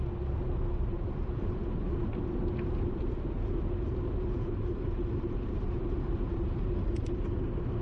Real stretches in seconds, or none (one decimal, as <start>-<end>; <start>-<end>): 0.0-7.8